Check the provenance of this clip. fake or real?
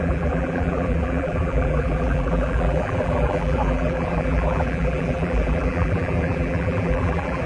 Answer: fake